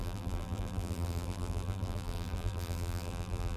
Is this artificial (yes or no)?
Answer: yes